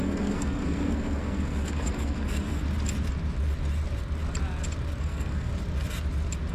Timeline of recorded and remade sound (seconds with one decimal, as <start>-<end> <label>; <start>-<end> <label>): 0.0-2.6 remade; 2.6-5.0 recorded; 5.0-5.5 remade; 5.5-6.5 recorded